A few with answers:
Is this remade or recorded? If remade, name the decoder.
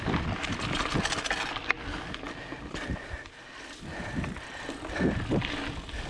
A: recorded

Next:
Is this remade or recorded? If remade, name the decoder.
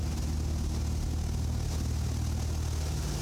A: recorded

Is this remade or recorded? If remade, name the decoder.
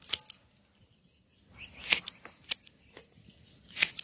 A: recorded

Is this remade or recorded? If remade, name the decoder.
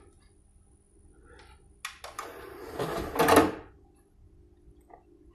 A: recorded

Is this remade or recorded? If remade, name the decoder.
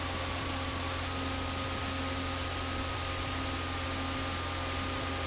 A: recorded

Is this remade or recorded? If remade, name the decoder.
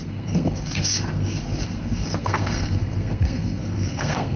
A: remade, codec, SNAC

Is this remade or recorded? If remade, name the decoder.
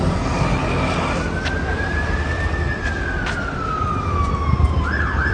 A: recorded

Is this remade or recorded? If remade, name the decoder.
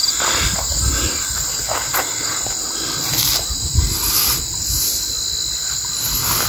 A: recorded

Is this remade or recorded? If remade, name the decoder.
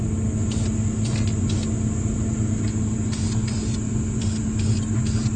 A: recorded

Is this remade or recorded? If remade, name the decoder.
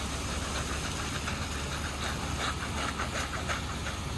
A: recorded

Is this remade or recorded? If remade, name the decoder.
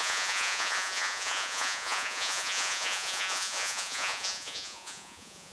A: remade, vocoder, Vocos